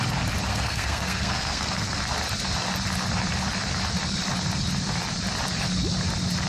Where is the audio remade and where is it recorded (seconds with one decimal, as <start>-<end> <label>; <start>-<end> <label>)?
0.0-0.5 recorded; 0.5-2.0 remade; 2.0-6.5 recorded

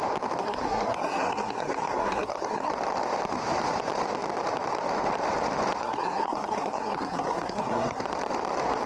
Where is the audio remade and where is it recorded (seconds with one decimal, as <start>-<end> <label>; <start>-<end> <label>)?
0.0-0.4 recorded; 0.4-2.7 remade; 2.7-5.8 recorded; 5.8-8.0 remade; 8.0-8.9 recorded